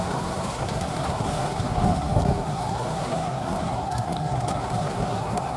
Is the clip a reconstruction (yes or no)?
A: yes